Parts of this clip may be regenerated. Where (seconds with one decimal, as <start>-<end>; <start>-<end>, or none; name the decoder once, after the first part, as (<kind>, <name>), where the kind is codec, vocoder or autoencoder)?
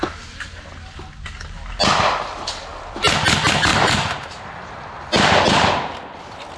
3.7-4.7 (vocoder, BigVGAN v2)